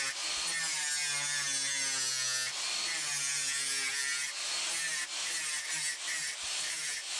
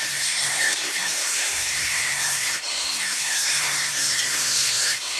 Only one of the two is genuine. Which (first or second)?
first